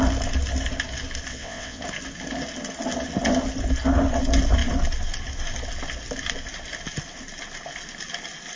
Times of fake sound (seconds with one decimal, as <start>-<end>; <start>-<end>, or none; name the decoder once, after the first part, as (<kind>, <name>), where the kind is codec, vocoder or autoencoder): 1.3-1.8 (vocoder, WaveNeXt)